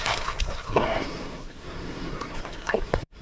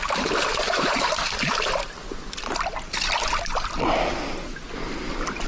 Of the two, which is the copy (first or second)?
first